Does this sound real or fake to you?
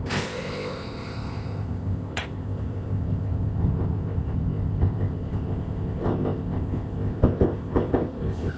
fake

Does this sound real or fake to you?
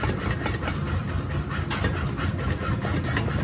real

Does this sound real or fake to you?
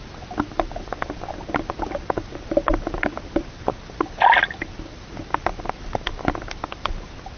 real